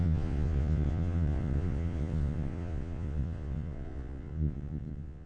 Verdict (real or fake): fake